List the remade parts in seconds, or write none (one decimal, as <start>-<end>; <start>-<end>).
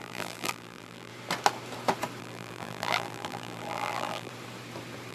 0.0-1.1; 2.2-4.3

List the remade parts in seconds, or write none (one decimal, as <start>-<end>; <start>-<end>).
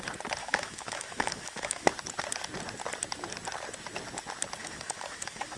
0.4-1.9; 4.6-5.6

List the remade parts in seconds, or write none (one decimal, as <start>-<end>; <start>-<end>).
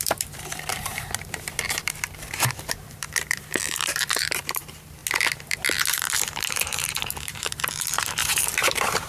0.0-5.0; 5.9-9.1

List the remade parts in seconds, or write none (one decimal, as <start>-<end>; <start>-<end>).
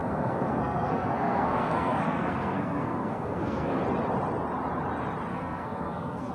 0.0-3.8; 5.3-6.3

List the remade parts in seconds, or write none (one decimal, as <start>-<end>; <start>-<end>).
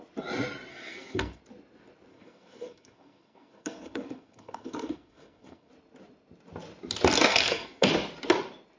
0.7-1.4; 2.1-5.7; 7.3-7.9